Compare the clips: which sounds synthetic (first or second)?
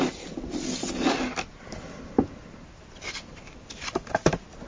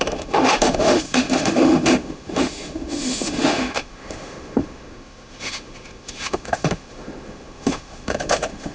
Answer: second